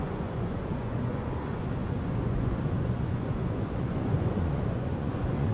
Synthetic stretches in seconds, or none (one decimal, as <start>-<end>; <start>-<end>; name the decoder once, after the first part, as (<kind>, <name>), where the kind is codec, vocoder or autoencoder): 0.0-5.5 (vocoder, Vocos)